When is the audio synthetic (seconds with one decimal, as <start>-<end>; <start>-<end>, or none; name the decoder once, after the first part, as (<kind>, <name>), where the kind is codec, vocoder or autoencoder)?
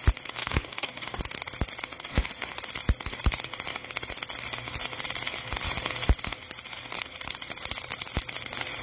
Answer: 0.4-1.2 (codec, DAC)